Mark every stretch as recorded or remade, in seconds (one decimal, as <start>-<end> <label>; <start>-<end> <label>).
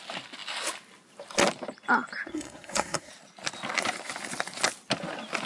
0.0-2.3 recorded; 2.3-3.1 remade; 3.1-5.5 recorded